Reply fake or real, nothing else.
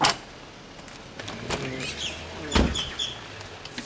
real